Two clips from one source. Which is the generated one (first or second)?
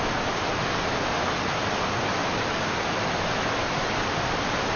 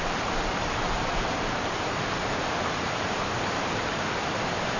second